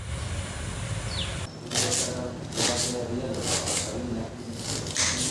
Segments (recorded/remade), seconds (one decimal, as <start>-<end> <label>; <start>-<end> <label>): 0.0-5.3 recorded